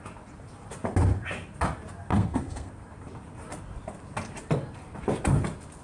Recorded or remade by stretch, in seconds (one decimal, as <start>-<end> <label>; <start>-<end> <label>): 0.0-2.1 recorded; 2.1-2.7 remade; 2.7-5.8 recorded

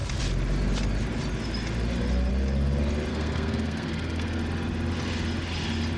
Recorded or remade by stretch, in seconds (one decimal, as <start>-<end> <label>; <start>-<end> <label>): 0.0-3.1 recorded; 3.1-4.4 remade; 4.4-6.0 recorded

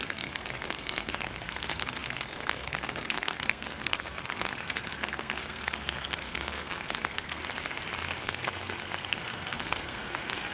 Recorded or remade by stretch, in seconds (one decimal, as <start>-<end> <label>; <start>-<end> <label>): 0.0-7.4 remade; 7.4-8.2 recorded; 8.2-10.5 remade

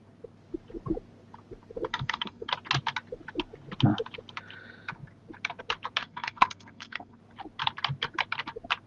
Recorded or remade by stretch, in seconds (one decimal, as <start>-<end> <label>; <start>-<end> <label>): 0.0-1.9 recorded; 1.9-2.5 remade; 2.5-6.0 recorded; 6.0-7.2 remade; 7.2-8.9 recorded

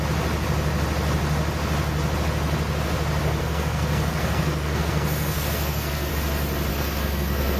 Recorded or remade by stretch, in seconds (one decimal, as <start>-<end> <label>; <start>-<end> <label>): 0.0-3.4 recorded; 3.4-6.1 remade; 6.1-6.7 recorded; 6.7-7.6 remade

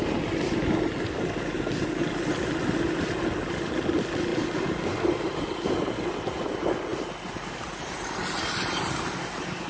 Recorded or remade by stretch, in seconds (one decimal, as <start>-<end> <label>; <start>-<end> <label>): 0.0-9.7 recorded

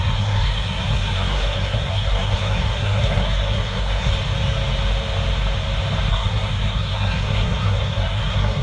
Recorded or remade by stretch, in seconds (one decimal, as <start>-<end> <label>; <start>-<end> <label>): 0.0-4.1 remade; 4.1-6.1 recorded; 6.1-8.6 remade